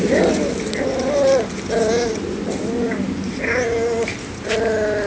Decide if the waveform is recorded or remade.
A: recorded